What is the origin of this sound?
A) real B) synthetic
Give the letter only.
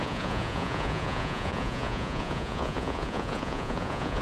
B